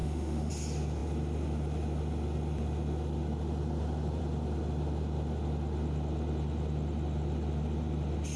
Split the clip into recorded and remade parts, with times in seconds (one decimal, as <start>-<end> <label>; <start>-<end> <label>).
0.0-0.5 remade; 0.5-8.4 recorded